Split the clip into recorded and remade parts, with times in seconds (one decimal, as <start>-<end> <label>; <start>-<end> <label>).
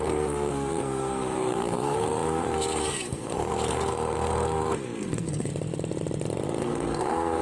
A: 0.0-5.5 remade; 5.5-6.6 recorded; 6.6-7.4 remade